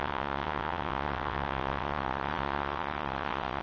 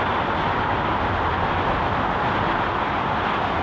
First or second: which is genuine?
second